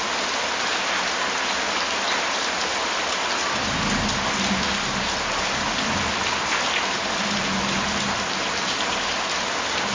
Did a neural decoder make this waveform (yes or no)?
no